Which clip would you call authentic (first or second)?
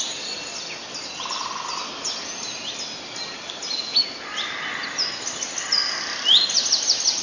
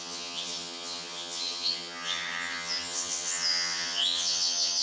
first